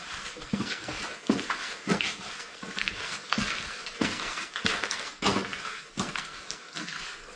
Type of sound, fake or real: fake